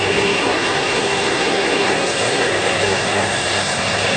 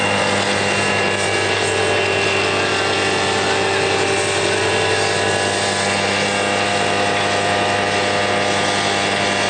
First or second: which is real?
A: second